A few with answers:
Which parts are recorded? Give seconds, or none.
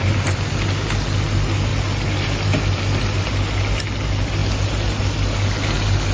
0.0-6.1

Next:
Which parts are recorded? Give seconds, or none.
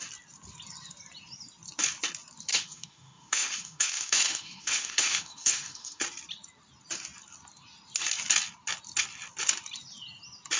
0.0-2.5; 6.0-10.6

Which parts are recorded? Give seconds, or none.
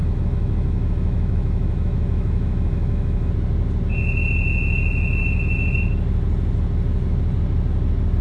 3.3-8.2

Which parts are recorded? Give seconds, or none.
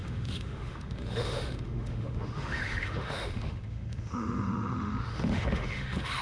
none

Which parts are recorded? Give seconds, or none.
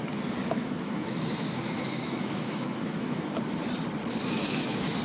0.0-0.4; 3.4-4.0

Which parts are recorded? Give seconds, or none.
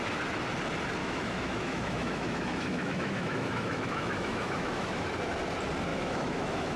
0.0-1.0; 5.1-5.9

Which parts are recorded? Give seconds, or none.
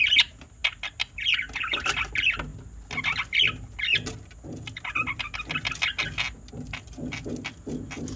0.0-8.2